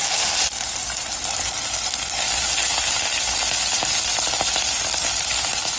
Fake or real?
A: real